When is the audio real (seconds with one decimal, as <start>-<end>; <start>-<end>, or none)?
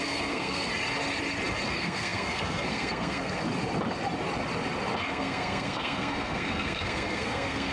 0.7-1.7; 3.4-5.0